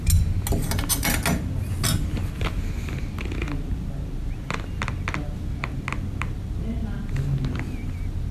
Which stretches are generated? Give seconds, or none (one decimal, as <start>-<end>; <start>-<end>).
none